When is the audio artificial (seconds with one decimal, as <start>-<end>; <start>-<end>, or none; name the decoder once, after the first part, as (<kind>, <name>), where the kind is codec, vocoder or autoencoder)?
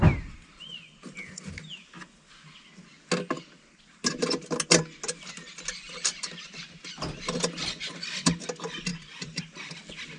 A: 8.9-9.7 (vocoder, BigVGAN v2)